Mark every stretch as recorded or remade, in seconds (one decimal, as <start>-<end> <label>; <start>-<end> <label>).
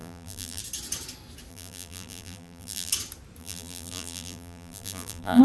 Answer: 0.0-0.6 remade; 0.6-1.5 recorded; 1.5-2.9 remade; 2.9-3.4 recorded; 3.4-5.4 remade